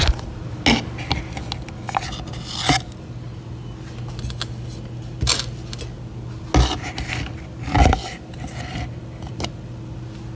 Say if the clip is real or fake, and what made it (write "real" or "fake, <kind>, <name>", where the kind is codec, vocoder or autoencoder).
real